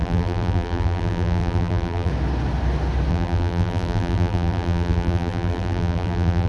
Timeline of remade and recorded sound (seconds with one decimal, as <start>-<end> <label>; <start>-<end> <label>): 0.0-2.1 remade; 2.1-3.1 recorded; 3.1-6.5 remade